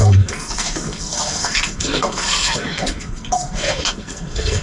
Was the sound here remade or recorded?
remade